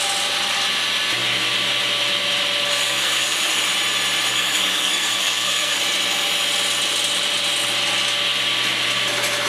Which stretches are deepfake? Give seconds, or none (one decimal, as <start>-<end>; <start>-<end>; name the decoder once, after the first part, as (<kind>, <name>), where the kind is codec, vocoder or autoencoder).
2.7-3.6 (codec, SNAC); 4.3-5.8